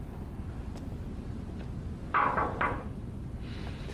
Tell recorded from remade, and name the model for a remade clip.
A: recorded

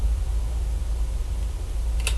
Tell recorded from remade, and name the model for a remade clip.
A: recorded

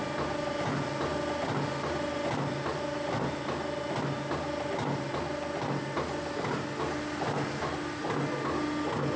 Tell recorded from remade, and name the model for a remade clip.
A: recorded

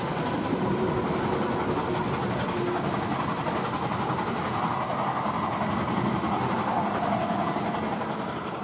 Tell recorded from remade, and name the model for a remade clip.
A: recorded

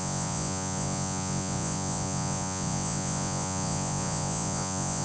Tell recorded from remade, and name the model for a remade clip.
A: remade, vocoder, Vocos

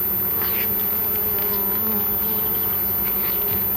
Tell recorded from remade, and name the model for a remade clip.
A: recorded